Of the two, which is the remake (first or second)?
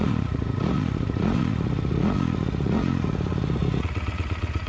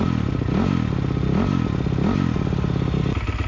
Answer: first